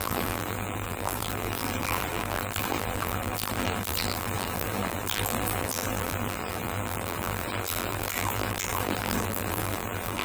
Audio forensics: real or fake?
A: fake